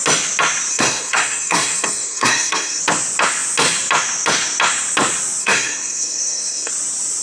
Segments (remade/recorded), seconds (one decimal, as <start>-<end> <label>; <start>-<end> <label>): 0.0-0.7 recorded; 0.7-2.8 remade; 2.8-5.4 recorded; 5.4-6.7 remade; 6.7-7.2 recorded